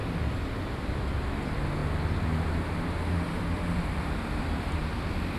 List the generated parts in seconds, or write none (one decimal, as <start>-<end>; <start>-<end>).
none